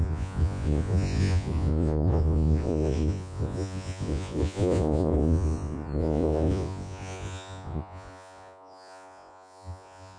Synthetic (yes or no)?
yes